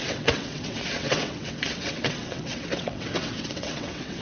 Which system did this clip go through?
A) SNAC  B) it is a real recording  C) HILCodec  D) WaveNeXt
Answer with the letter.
D